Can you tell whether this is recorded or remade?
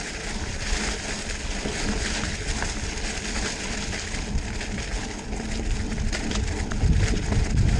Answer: recorded